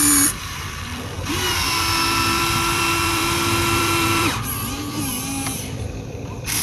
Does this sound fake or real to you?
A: fake